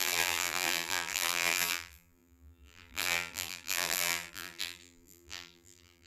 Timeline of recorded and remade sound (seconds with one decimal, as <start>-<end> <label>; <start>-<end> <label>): 0.0-6.1 remade